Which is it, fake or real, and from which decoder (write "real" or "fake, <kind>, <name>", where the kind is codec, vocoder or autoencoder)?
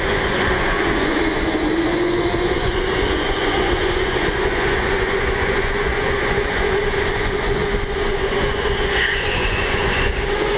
fake, vocoder, Vocos